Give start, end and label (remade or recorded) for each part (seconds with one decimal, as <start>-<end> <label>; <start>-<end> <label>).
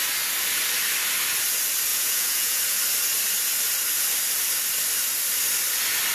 0.0-1.9 recorded; 1.9-2.6 remade; 2.6-6.1 recorded